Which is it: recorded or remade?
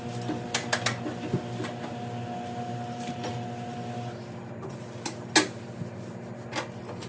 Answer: recorded